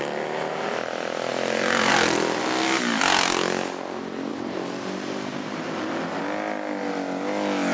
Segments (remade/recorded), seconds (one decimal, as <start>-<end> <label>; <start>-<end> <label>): 0.0-1.3 recorded; 1.3-1.9 remade; 1.9-4.3 recorded; 4.3-6.2 remade; 6.2-7.7 recorded